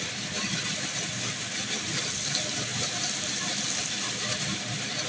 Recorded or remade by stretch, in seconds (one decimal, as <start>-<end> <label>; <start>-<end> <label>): 0.0-5.1 recorded